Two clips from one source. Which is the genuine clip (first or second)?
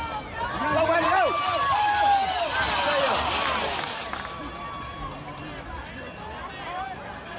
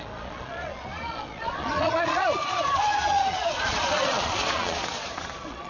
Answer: first